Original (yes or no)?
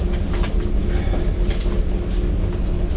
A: yes